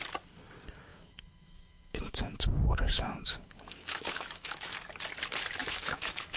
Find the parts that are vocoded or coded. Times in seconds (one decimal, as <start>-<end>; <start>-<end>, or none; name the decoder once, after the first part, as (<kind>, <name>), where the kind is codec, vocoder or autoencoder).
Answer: 0.9-4.7 (autoencoder, DAC-VAE); 5.6-6.4